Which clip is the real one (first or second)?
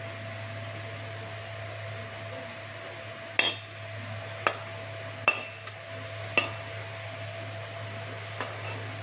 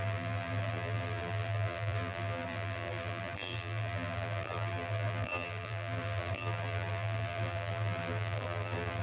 first